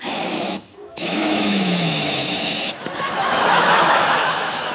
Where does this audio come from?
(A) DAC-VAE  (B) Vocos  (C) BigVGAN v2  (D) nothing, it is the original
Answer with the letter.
A